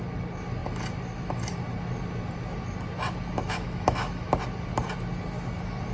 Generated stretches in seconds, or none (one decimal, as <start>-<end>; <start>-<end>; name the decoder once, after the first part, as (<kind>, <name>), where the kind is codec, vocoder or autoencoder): 3.4-4.3 (autoencoder, DAC-VAE)